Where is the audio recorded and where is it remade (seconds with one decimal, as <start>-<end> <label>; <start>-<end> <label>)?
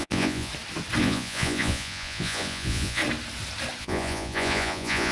0.0-0.5 remade; 0.5-1.0 recorded; 1.0-3.0 remade; 3.0-3.8 recorded; 3.8-5.1 remade